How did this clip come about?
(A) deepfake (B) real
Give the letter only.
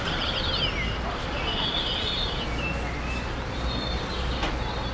B